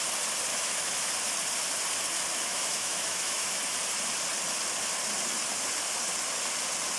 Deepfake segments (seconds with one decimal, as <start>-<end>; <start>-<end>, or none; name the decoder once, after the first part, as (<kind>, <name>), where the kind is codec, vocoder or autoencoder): 0.5-1.1 (autoencoder, DAC-VAE); 2.5-3.6